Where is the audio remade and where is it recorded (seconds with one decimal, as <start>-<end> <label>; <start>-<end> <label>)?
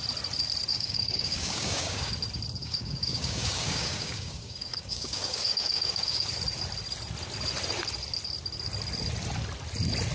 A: 0.0-0.7 recorded; 0.7-2.1 remade; 2.1-2.6 recorded; 2.6-6.3 remade; 6.3-10.1 recorded